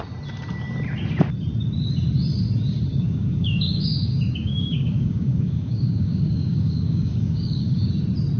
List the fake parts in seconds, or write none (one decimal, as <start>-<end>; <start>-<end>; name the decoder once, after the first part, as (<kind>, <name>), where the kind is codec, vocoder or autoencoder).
2.9-7.9 (codec, DAC)